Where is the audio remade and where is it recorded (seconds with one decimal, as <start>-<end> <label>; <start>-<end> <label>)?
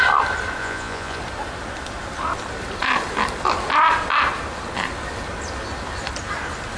0.0-0.6 recorded; 0.6-1.2 remade; 1.2-6.8 recorded